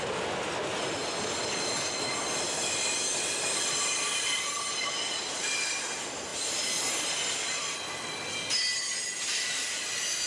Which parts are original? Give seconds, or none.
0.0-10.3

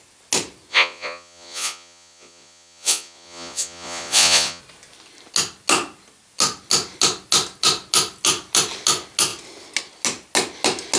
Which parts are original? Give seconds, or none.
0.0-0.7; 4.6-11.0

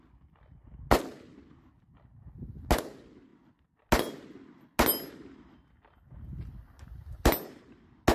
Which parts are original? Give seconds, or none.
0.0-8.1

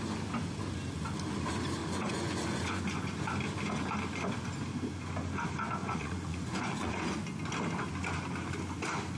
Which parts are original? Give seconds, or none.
0.0-1.8; 2.8-5.8; 7.2-9.2